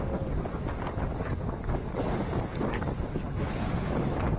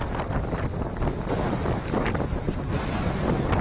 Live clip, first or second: second